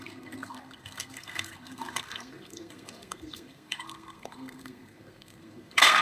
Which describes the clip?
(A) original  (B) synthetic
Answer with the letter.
B